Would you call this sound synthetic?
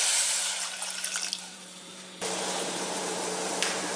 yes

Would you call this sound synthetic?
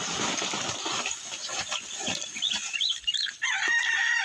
yes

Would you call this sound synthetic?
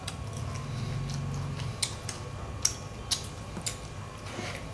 no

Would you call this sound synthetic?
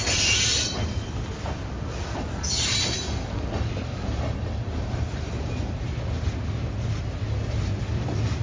no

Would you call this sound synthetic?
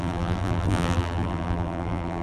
yes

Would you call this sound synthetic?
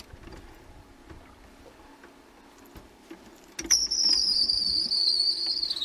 no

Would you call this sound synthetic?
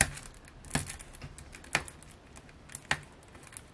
no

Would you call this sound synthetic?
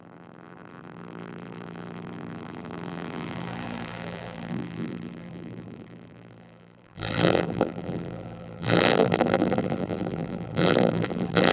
yes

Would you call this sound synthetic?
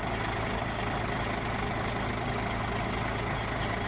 no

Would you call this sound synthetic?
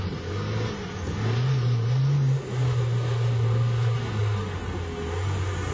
no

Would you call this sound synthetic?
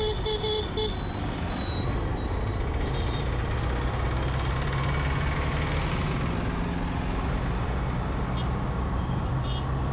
no